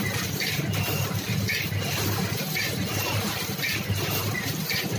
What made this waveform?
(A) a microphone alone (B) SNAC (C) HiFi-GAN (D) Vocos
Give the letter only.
A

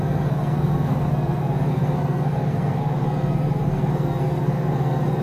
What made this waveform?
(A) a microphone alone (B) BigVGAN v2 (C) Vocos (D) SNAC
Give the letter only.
D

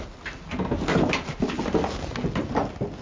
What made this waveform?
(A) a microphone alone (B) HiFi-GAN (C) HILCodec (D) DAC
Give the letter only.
A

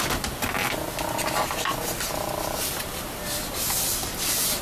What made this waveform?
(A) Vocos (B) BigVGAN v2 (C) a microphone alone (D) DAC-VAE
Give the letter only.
C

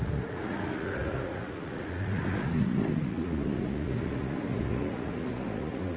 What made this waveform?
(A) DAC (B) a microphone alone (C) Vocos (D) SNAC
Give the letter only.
C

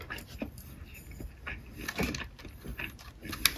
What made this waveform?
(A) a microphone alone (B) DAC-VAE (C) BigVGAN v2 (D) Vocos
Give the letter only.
A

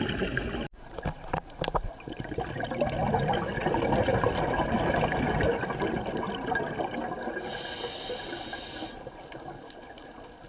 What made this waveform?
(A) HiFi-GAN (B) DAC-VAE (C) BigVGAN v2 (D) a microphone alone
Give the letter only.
D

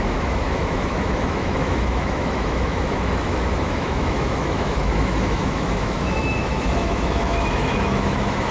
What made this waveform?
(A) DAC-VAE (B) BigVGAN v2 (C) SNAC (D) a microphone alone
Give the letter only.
A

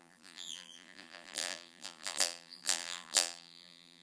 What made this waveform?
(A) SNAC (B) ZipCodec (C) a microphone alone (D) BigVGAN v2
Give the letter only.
D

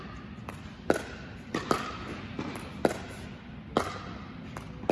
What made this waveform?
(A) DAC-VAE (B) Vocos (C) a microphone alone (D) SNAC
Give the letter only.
C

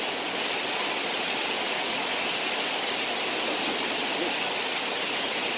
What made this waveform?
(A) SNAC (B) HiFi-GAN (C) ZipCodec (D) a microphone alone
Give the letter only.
D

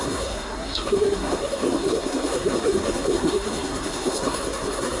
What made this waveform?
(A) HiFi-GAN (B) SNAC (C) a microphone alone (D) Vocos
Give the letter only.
B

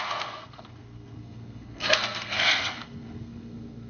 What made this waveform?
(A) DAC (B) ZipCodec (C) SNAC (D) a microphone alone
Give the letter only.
C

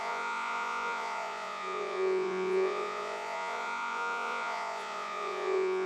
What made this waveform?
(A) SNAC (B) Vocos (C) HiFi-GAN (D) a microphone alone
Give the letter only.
B